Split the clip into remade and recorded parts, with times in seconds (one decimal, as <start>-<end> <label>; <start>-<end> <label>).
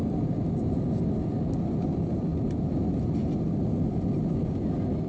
0.0-5.1 recorded